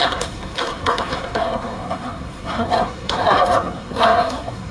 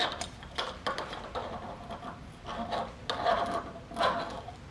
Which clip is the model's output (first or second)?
first